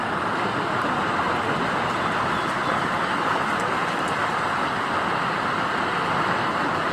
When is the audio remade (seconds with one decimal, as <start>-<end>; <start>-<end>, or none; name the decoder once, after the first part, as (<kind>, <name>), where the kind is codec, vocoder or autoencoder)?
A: none